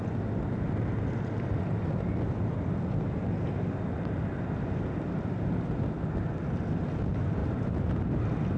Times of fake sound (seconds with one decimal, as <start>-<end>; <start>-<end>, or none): 7.4-8.2